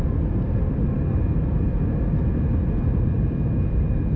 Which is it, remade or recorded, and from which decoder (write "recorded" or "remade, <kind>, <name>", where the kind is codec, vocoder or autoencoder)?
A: remade, vocoder, BigVGAN v2